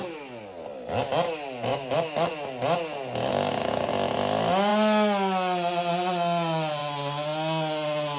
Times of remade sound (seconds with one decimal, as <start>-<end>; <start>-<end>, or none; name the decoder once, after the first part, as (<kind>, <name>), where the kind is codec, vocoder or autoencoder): 1.7-2.3 (codec, DAC); 3.3-3.9